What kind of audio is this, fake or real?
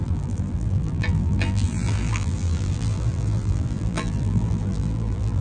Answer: fake